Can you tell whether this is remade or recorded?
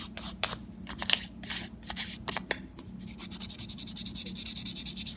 recorded